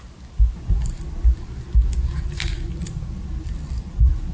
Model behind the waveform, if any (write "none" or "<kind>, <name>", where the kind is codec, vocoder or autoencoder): none